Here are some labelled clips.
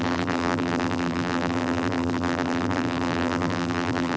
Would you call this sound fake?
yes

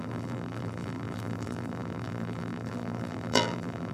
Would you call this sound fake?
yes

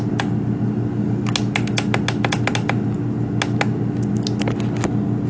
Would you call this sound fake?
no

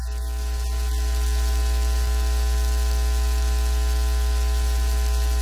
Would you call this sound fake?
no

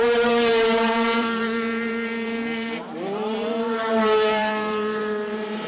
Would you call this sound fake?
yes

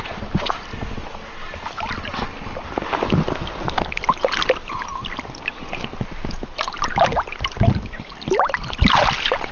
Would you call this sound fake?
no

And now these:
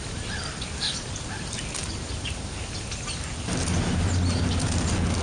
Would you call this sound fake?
no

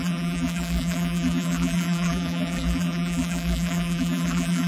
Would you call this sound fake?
yes